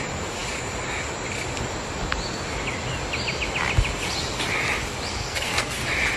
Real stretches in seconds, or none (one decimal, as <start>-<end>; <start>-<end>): 0.0-5.1; 5.8-6.2